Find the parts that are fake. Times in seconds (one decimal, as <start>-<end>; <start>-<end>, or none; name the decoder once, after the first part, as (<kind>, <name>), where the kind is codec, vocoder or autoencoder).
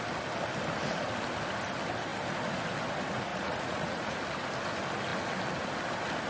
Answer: 3.3-4.2 (vocoder, Vocos)